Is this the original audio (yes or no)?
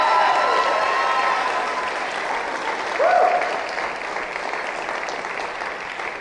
yes